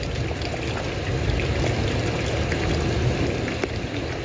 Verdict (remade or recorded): recorded